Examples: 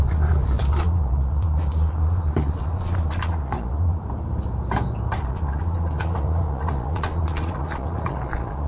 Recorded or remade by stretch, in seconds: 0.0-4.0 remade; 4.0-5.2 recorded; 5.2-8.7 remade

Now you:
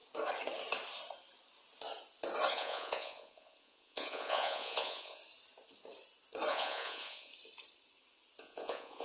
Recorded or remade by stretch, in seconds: 0.0-2.5 recorded; 2.5-5.2 remade; 5.2-6.5 recorded; 6.5-7.3 remade; 7.3-8.4 recorded; 8.4-9.0 remade

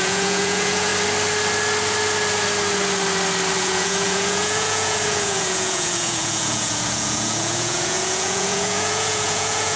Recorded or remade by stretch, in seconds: 0.0-0.9 remade; 0.9-3.6 recorded; 3.6-9.8 remade

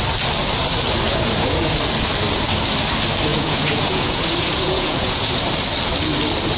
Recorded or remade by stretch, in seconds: 0.0-1.1 recorded; 1.1-1.8 remade; 1.8-3.3 recorded; 3.3-5.4 remade; 5.4-6.6 recorded

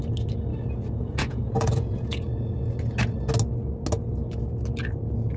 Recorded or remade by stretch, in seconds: 0.0-0.5 recorded; 0.5-2.8 remade; 2.8-5.4 recorded

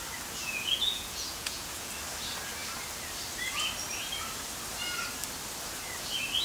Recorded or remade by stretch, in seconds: 0.0-0.4 recorded; 0.4-1.9 remade; 1.9-6.4 recorded

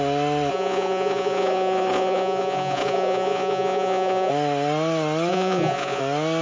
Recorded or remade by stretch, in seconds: 0.0-0.5 recorded; 0.5-4.3 remade; 4.3-5.3 recorded; 5.3-6.0 remade; 6.0-6.4 recorded